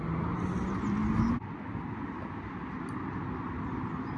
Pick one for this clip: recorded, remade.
recorded